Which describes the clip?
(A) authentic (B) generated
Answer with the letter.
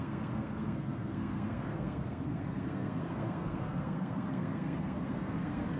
B